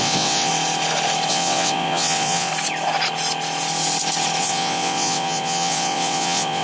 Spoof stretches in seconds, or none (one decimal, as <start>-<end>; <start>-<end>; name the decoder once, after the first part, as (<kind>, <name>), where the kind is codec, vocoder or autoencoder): 0.0-0.5 (vocoder, WaveNeXt); 1.3-2.5; 4.4-6.6